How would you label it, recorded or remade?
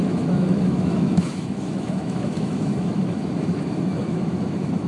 remade